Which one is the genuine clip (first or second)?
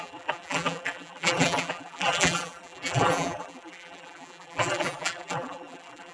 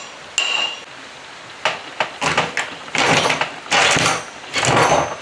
second